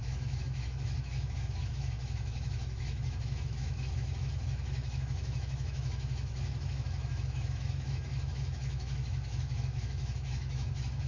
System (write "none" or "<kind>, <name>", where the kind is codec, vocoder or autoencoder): autoencoder, DAC-VAE